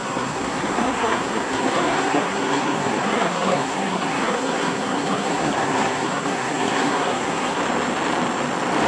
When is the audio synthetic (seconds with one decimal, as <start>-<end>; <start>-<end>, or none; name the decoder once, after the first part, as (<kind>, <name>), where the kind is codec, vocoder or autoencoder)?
0.0-7.6 (codec, SNAC)